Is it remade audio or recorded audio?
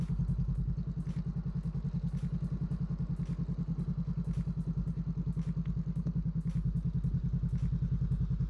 recorded